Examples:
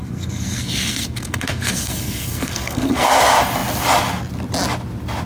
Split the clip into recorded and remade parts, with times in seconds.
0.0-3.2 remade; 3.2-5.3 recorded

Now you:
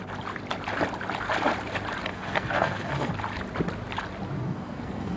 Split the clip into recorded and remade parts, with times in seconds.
0.0-2.1 recorded; 2.1-3.1 remade; 3.1-4.4 recorded; 4.4-5.2 remade

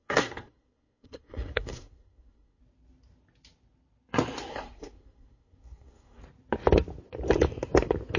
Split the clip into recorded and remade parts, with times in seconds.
0.0-2.6 remade; 2.6-4.5 recorded; 4.5-6.2 remade; 6.2-8.2 recorded

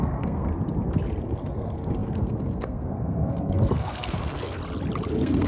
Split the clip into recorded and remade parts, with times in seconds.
0.0-0.5 remade; 0.5-1.2 recorded; 1.2-4.6 remade; 4.6-5.1 recorded; 5.1-5.5 remade

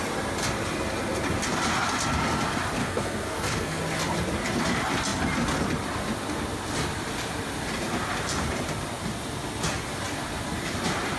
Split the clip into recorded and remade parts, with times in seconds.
0.0-2.8 recorded; 2.8-3.8 remade; 3.8-11.2 recorded

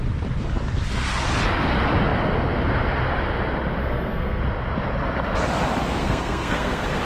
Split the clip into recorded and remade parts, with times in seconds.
0.0-3.8 recorded; 3.8-4.4 remade; 4.4-6.0 recorded; 6.0-7.0 remade